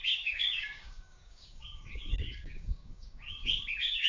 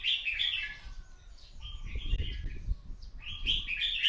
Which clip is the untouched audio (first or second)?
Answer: second